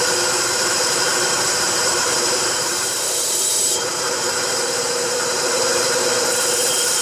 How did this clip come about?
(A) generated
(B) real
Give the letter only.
A